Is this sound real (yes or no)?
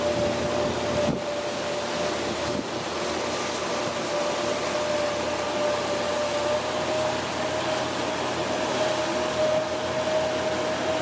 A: yes